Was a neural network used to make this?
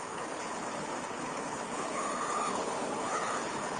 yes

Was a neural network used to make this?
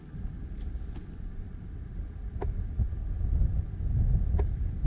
no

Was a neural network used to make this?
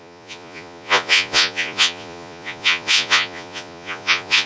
yes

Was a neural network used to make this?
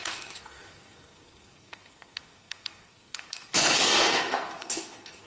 yes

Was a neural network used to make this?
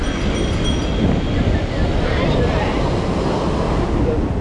no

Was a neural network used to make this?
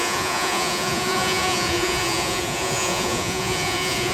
yes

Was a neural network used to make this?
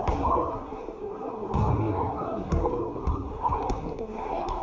yes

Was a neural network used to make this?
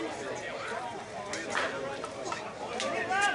no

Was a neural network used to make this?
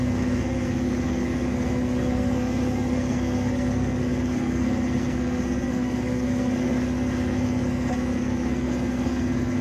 yes